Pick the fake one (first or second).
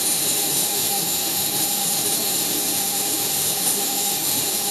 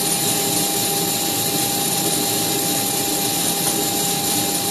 first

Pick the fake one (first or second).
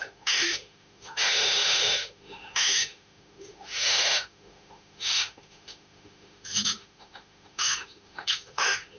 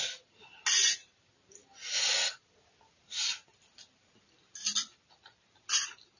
first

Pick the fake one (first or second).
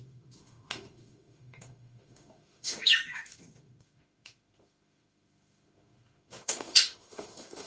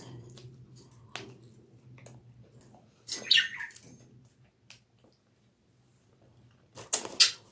first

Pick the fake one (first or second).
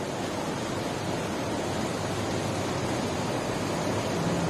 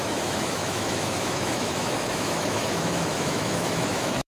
second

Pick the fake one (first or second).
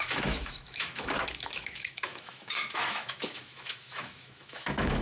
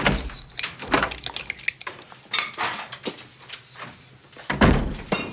first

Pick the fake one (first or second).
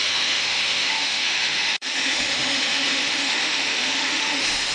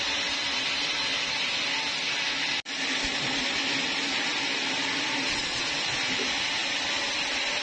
first